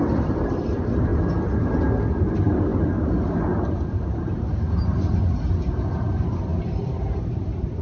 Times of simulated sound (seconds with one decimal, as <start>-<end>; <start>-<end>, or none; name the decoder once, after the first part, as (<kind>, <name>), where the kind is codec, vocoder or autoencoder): 0.0-1.1 (vocoder, BigVGAN v2); 2.2-7.8